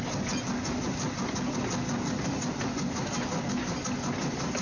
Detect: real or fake real